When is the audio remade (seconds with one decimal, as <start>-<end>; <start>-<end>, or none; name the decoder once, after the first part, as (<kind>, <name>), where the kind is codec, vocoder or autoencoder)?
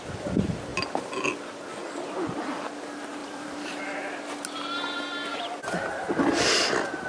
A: 3.2-3.8 (vocoder, BigVGAN v2); 5.3-5.9